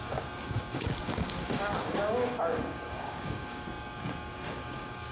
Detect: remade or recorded remade